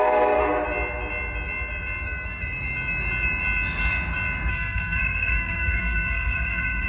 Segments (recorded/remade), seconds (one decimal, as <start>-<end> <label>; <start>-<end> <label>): 0.0-0.4 remade; 0.4-4.5 recorded; 4.5-6.9 remade